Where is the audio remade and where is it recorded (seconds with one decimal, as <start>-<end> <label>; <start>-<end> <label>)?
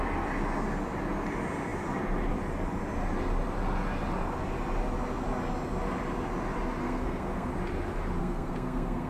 0.0-6.8 recorded; 6.8-7.5 remade; 7.5-8.2 recorded; 8.2-9.1 remade